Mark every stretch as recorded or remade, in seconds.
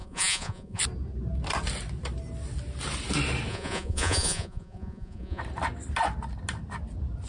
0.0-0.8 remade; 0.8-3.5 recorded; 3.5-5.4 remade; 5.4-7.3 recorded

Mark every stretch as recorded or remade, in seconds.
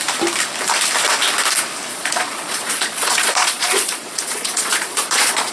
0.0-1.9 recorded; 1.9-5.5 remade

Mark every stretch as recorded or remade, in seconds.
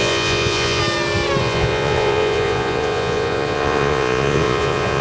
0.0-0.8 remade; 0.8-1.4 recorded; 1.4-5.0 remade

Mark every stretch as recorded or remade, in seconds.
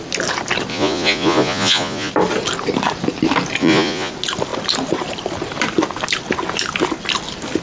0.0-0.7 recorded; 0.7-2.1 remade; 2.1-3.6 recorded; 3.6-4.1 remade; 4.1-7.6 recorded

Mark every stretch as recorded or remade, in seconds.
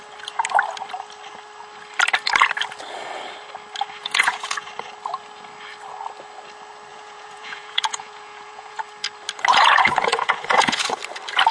0.0-4.0 recorded; 4.0-4.7 remade; 4.7-6.9 recorded; 6.9-8.8 remade; 8.8-9.5 recorded; 9.5-11.0 remade; 11.0-11.5 recorded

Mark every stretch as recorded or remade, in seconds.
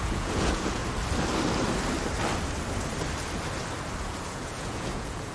0.0-0.8 remade; 0.8-4.0 recorded; 4.0-5.3 remade